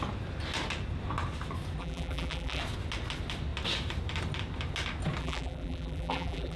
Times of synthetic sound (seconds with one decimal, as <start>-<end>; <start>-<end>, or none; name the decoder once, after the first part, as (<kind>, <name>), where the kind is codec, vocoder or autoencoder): 1.8-2.6 (vocoder, BigVGAN v2); 5.2-6.6